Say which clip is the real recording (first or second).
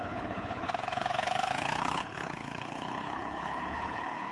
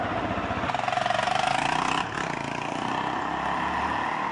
second